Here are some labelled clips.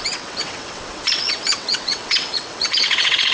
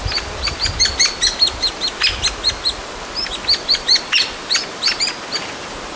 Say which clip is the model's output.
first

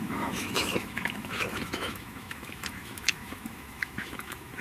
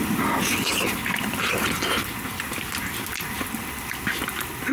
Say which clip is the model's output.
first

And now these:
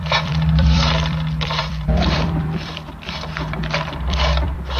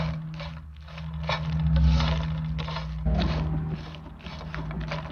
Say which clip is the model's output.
first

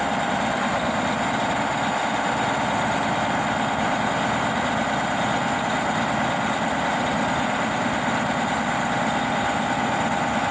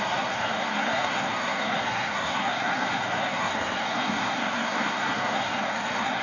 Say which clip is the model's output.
second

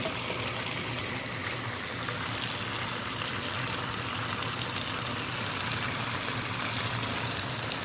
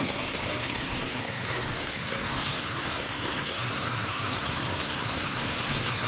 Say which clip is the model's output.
second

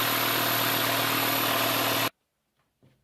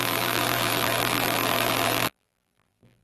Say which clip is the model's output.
second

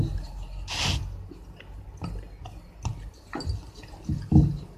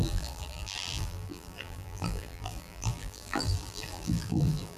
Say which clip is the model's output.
second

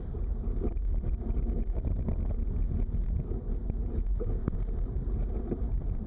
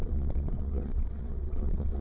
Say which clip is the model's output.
second